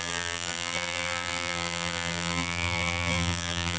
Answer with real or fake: fake